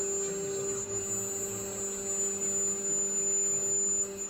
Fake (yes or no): no